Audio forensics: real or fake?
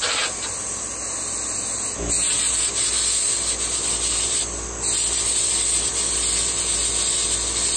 real